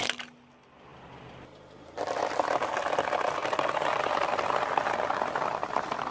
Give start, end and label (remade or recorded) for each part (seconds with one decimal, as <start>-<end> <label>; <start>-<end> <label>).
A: 0.0-6.1 remade

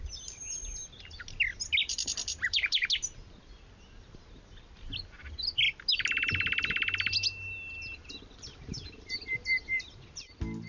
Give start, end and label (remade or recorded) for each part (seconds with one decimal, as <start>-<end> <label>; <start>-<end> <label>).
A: 0.0-1.8 recorded; 1.8-2.9 remade; 2.9-8.7 recorded; 8.7-9.3 remade; 9.3-10.7 recorded

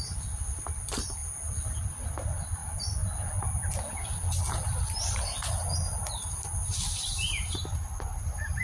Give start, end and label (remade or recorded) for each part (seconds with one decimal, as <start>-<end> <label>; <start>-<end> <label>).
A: 0.0-8.6 recorded

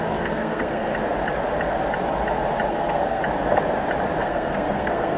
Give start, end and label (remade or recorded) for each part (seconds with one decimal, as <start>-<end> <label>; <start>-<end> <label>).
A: 0.0-0.9 remade; 0.9-2.7 recorded; 2.7-3.2 remade; 3.2-4.2 recorded; 4.2-5.2 remade

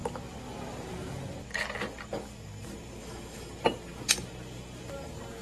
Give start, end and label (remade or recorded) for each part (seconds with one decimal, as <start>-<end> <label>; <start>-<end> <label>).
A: 0.0-3.0 recorded; 3.0-3.5 remade; 3.5-5.4 recorded